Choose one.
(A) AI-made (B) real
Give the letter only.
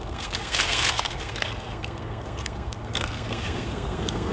A